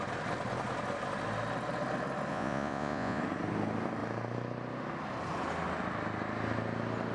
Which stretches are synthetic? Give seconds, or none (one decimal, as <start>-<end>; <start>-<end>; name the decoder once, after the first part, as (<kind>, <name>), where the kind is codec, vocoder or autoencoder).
2.3-3.2 (vocoder, Vocos)